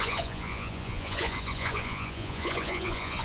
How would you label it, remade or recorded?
remade